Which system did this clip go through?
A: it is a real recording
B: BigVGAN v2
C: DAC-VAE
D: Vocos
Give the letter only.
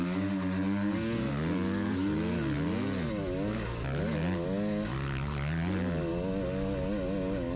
A